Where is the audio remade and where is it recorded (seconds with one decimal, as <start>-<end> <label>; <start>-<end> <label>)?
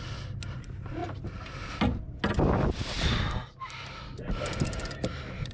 0.0-5.5 recorded